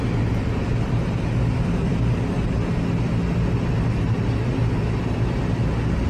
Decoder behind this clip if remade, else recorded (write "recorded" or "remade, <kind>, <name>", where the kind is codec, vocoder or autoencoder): recorded